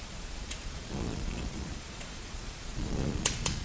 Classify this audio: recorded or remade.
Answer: remade